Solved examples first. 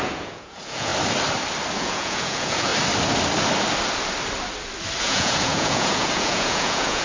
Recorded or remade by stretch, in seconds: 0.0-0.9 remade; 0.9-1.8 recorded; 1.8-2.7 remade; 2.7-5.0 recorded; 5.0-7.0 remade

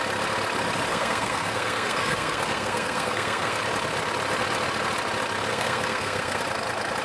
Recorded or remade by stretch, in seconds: 0.0-0.9 recorded; 0.9-3.6 remade; 3.6-5.5 recorded; 5.5-6.4 remade; 6.4-7.0 recorded

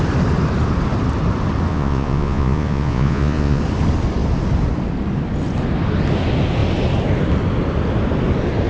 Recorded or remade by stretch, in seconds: 0.0-1.7 recorded; 1.7-3.6 remade; 3.6-8.7 recorded

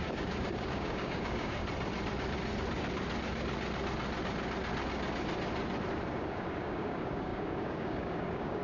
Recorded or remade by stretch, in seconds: 0.0-1.6 remade; 1.6-6.1 recorded; 6.1-8.6 remade

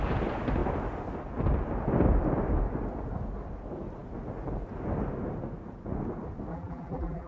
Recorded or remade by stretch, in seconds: 0.0-6.5 recorded; 6.5-7.3 remade

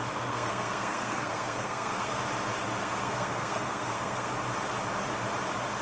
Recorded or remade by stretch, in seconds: 0.0-2.2 remade; 2.2-2.8 recorded; 2.8-4.3 remade; 4.3-5.8 recorded

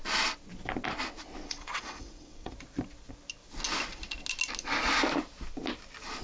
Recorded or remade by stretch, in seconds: 0.0-1.4 recorded; 1.4-2.5 remade; 2.5-6.2 recorded

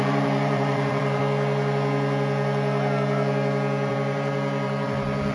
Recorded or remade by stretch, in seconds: 0.0-1.2 remade; 1.2-3.9 recorded; 3.9-5.3 remade